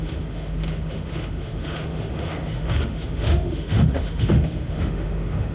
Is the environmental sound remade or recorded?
remade